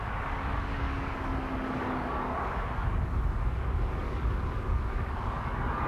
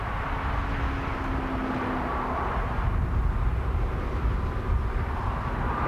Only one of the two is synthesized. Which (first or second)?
first